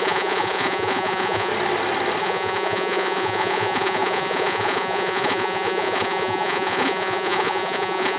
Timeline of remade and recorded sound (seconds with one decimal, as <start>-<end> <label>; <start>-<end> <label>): 0.0-1.5 remade; 1.5-2.2 recorded; 2.2-8.2 remade